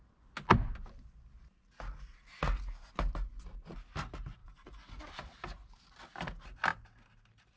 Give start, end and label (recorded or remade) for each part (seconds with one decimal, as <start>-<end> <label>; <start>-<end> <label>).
0.0-4.4 recorded; 4.4-5.0 remade; 5.0-7.6 recorded